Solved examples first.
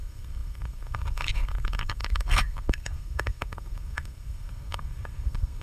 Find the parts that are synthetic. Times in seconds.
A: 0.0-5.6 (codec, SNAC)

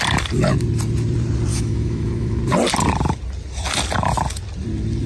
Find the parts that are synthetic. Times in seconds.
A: 1.5-2.4 (autoencoder, DAC-VAE)

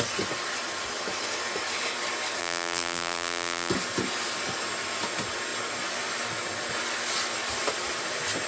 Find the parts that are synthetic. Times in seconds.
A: 2.4-3.7 (vocoder, BigVGAN v2)

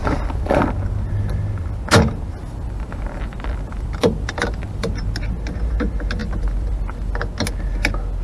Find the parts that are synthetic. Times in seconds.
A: 0.0-0.6 (vocoder, BigVGAN v2); 2.4-4.9; 6.2-7.1

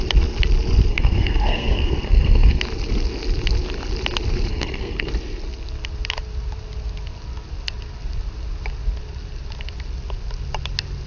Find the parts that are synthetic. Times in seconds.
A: 0.9-2.6 (codec, SNAC); 4.5-5.1